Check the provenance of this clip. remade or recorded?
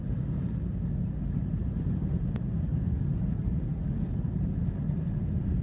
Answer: recorded